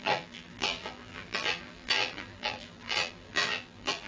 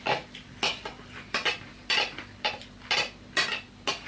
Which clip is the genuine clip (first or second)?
second